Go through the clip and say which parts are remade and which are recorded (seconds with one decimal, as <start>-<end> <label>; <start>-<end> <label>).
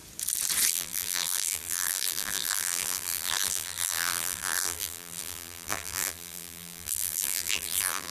0.0-0.7 recorded; 0.7-8.1 remade